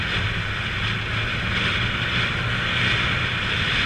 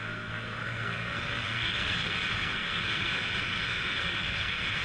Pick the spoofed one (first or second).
second